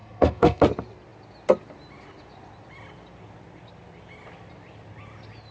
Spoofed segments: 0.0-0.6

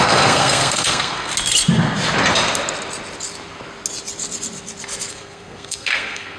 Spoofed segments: 0.0-1.3; 5.1-6.4

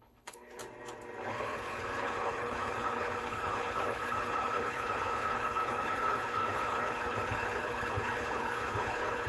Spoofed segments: 0.0-0.6; 1.3-9.3

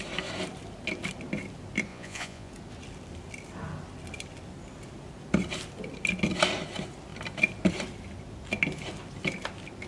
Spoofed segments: 1.9-2.5